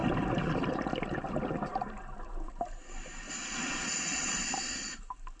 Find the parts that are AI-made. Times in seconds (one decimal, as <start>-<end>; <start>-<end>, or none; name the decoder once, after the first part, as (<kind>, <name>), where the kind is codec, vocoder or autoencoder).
3.6-4.4 (vocoder, Vocos)